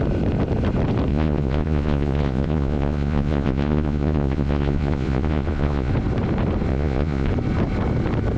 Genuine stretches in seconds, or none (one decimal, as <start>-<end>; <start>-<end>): 0.0-1.1; 5.9-6.7; 7.3-8.4